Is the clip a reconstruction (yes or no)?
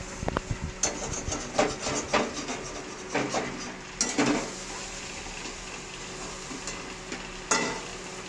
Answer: no